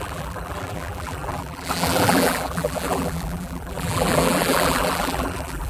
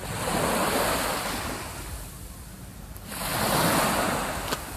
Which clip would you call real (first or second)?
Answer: second